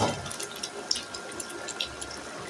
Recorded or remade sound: recorded